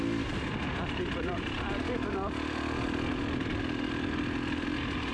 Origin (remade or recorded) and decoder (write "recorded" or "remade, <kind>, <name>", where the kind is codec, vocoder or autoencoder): recorded